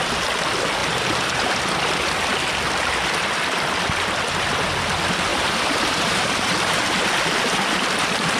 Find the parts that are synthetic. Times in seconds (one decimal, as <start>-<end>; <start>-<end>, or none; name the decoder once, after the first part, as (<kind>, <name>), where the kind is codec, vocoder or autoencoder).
0.8-1.5 (vocoder, BigVGAN v2); 5.3-7.1